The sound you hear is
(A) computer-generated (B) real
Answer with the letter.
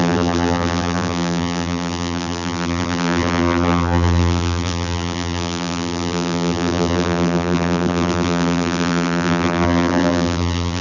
A